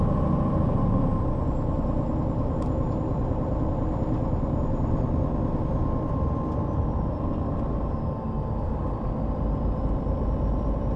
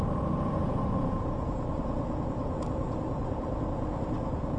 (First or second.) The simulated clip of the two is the second